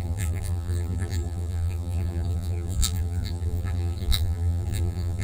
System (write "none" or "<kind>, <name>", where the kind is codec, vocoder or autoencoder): vocoder, BigVGAN v2